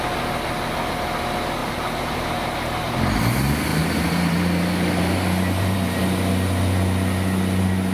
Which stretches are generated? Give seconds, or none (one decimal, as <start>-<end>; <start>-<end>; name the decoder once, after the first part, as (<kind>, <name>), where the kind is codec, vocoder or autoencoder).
1.6-2.9 (vocoder, BigVGAN v2); 3.7-6.0